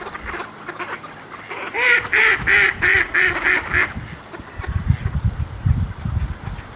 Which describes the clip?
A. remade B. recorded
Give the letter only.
B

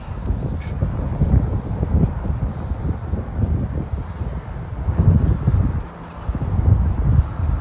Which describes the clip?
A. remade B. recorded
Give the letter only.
B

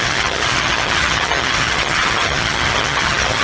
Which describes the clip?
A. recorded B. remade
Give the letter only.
B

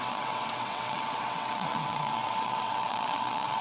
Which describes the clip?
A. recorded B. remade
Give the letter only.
B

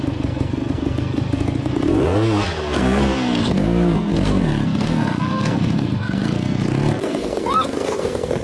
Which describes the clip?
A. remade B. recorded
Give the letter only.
A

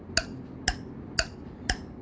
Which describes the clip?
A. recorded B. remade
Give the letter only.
A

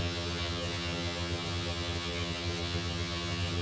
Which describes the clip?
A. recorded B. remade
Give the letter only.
B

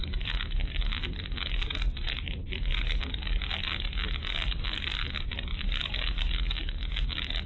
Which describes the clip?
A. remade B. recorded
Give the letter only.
B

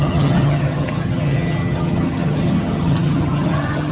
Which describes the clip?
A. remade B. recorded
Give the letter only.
A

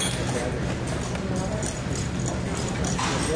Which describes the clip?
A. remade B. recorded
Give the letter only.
B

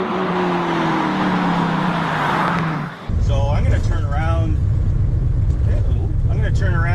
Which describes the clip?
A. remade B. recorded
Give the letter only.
B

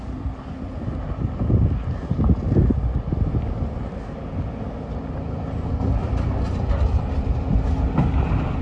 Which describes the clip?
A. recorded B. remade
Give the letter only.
A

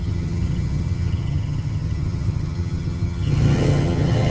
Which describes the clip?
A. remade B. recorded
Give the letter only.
A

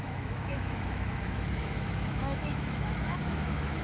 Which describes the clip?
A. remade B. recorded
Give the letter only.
A